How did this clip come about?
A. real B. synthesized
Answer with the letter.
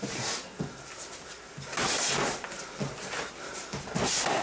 A